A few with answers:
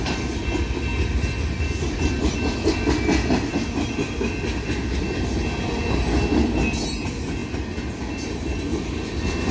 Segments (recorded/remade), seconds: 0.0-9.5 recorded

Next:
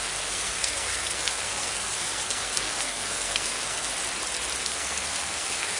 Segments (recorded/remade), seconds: 0.0-3.9 remade; 3.9-4.6 recorded; 4.6-5.8 remade